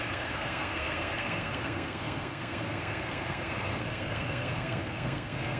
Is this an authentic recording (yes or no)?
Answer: no